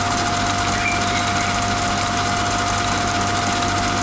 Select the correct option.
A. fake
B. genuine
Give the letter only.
B